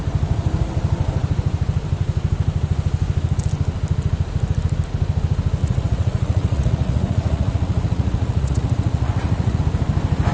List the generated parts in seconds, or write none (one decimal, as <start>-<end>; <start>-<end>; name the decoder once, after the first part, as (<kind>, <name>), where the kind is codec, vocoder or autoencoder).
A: 5.6-9.6 (vocoder, Vocos)

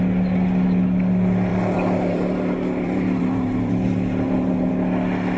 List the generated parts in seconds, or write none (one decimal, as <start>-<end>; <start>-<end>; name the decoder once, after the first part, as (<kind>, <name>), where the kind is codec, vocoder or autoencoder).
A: 1.5-4.7 (vocoder, BigVGAN v2)